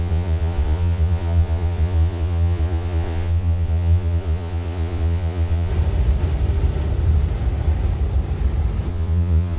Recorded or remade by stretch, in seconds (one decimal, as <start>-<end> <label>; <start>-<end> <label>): 0.0-5.7 remade; 5.7-8.9 recorded; 8.9-9.6 remade